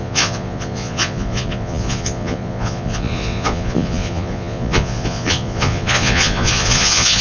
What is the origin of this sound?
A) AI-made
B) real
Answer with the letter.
A